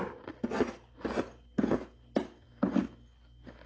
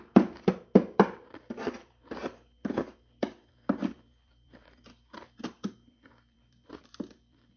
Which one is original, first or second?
first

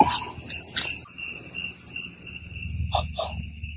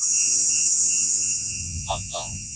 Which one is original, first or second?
first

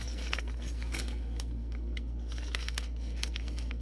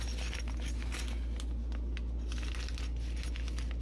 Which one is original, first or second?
second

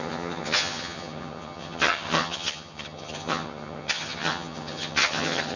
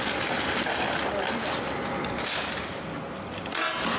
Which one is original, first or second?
second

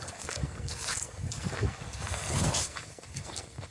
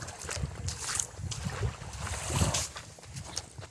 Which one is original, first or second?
second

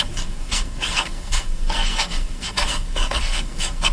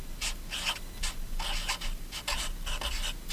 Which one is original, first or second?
second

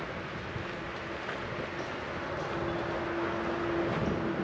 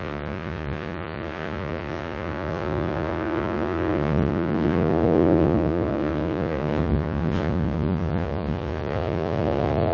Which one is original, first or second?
first